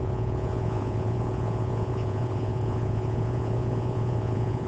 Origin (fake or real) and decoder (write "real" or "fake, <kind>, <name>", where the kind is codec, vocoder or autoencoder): fake, vocoder, Vocos